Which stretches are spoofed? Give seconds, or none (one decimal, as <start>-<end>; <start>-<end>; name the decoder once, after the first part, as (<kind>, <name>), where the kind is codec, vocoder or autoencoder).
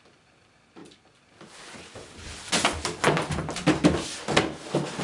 none